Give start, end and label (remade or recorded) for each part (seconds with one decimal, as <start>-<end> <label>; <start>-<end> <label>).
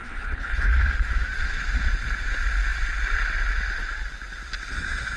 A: 0.0-0.7 remade; 0.7-5.2 recorded